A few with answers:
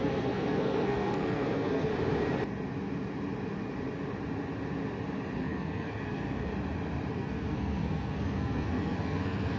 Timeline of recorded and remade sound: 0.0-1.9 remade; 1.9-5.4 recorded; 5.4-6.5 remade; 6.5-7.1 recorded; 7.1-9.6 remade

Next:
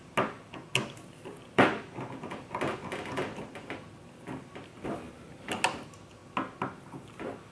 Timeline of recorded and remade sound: 0.0-7.5 recorded

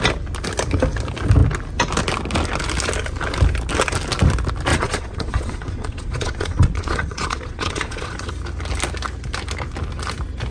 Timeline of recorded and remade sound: 0.0-4.7 recorded; 4.7-8.3 remade; 8.3-10.5 recorded

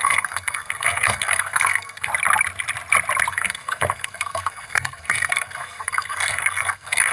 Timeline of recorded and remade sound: 0.0-2.1 remade; 2.1-3.3 recorded; 3.3-7.1 remade

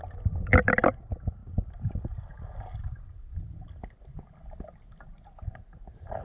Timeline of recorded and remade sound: 0.0-6.2 recorded

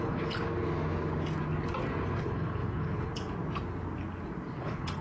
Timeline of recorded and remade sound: 0.0-0.4 remade; 0.4-2.2 recorded; 2.2-3.1 remade; 3.1-4.6 recorded; 4.6-5.0 remade